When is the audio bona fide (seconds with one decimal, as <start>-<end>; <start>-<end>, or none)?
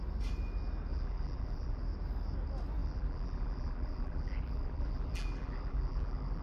0.0-0.9; 1.8-2.8